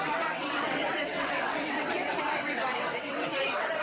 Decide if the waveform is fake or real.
fake